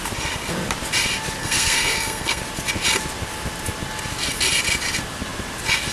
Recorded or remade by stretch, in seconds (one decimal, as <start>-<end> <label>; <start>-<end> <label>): 0.0-1.4 recorded; 1.4-2.4 remade; 2.4-5.9 recorded